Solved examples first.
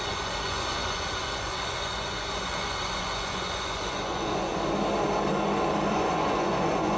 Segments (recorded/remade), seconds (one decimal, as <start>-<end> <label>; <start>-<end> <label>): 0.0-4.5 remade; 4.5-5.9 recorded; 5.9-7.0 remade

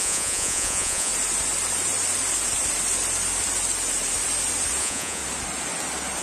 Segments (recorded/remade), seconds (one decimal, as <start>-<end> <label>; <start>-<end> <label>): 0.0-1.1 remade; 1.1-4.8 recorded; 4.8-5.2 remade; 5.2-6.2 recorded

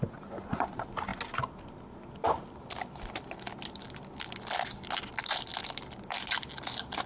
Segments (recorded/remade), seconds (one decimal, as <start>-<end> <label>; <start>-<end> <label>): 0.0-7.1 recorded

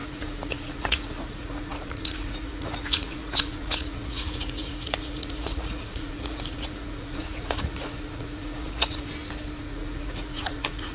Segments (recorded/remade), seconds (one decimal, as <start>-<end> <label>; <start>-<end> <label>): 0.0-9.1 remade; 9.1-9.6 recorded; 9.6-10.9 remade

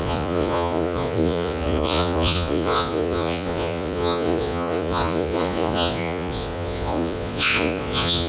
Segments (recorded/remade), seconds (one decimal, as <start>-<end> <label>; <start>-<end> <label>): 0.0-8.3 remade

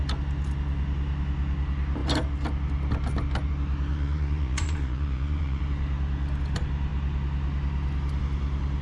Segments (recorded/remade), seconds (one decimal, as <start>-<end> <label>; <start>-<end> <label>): 0.0-3.9 recorded; 3.9-5.6 remade; 5.6-8.8 recorded